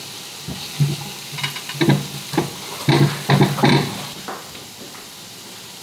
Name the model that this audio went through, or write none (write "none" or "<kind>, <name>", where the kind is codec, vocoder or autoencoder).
none